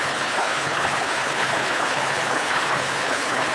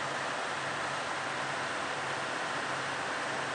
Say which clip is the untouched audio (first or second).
second